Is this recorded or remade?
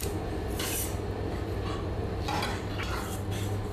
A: recorded